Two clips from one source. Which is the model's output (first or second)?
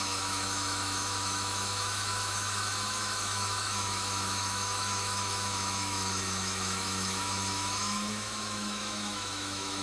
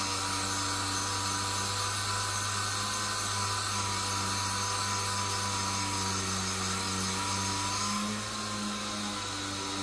first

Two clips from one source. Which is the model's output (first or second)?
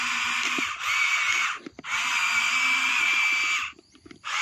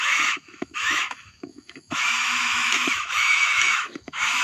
second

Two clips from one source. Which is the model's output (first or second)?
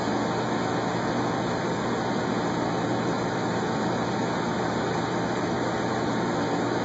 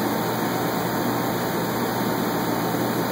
first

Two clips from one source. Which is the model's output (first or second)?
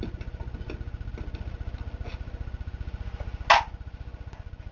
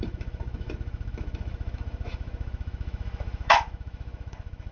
second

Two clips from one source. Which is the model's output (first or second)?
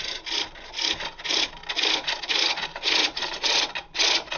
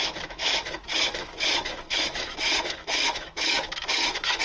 second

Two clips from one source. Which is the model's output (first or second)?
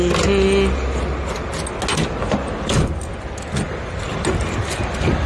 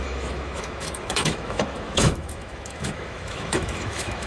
second